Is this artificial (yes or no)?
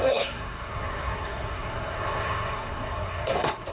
yes